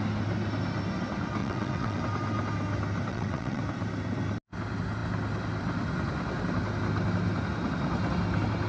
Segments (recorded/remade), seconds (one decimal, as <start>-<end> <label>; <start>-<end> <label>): 0.0-1.4 recorded; 1.4-2.0 remade; 2.0-3.1 recorded; 3.1-3.6 remade; 3.6-8.7 recorded